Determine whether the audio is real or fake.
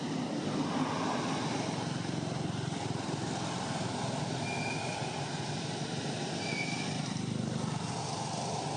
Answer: real